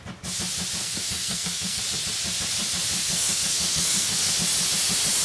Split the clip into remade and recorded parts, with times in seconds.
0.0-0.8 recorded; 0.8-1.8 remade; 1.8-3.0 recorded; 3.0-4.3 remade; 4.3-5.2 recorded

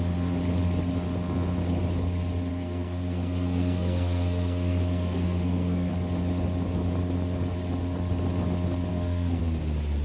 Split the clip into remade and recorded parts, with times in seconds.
0.0-2.5 recorded; 2.5-5.9 remade; 5.9-8.9 recorded; 8.9-9.4 remade; 9.4-10.0 recorded

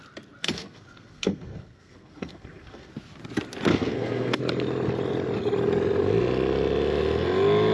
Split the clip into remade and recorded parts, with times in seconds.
0.0-0.4 recorded; 0.4-2.9 remade; 2.9-3.7 recorded; 3.7-4.4 remade; 4.4-7.7 recorded

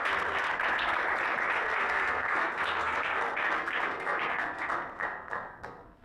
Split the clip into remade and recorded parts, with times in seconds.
0.0-1.0 remade; 1.0-1.6 recorded; 1.6-6.0 remade

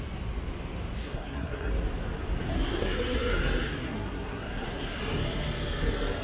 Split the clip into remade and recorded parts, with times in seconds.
0.0-1.0 recorded; 1.0-1.7 remade; 1.7-2.5 recorded; 2.5-3.4 remade; 3.4-3.8 recorded; 3.8-5.0 remade; 5.0-6.2 recorded